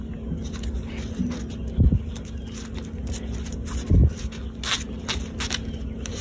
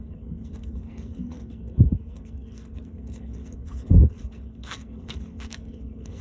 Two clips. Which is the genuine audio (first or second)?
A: first